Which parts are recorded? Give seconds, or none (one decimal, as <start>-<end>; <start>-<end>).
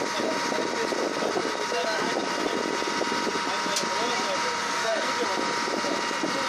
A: 0.0-4.6; 5.1-6.5